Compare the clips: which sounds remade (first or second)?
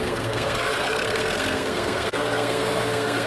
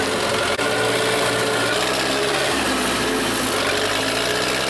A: first